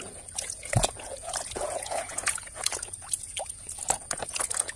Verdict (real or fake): fake